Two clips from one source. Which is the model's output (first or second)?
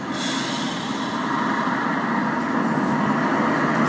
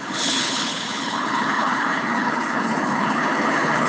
second